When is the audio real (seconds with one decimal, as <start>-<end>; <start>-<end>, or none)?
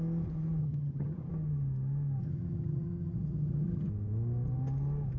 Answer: 0.0-0.6; 1.3-2.2; 3.9-5.2